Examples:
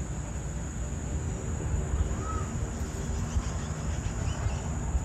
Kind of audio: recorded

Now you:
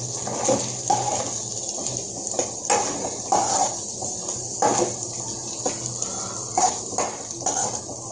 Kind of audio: recorded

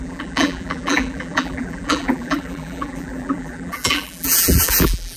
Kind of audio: remade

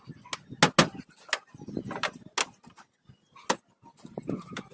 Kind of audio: recorded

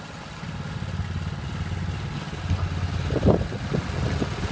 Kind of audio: recorded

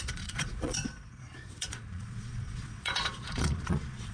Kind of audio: remade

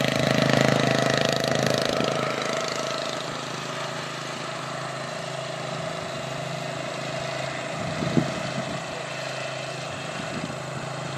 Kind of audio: recorded